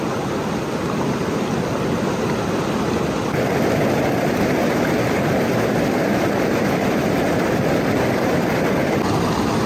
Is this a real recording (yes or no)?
yes